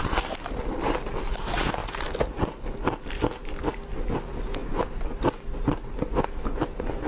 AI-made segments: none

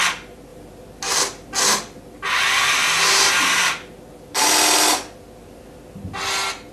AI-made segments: none

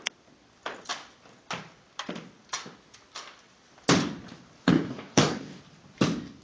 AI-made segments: 4.6-5.6 (codec, DAC)

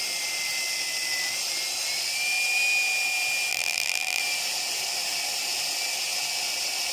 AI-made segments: 3.5-4.2 (vocoder, BigVGAN v2)